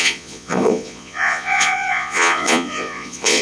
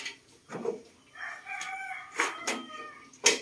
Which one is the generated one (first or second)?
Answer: first